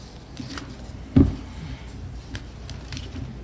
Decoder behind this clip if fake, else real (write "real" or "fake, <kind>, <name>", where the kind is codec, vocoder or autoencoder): real